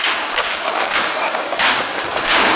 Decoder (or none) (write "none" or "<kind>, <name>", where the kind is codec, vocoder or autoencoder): codec, DAC